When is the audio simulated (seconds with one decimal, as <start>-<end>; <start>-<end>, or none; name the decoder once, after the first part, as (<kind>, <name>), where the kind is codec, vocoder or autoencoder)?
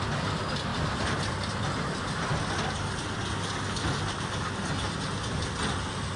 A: none